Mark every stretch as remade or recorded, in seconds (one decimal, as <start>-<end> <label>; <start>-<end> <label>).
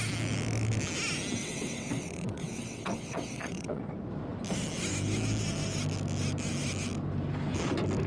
0.0-1.4 recorded; 1.4-3.8 remade; 3.8-8.1 recorded